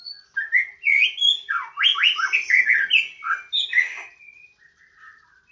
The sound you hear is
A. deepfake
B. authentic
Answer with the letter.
B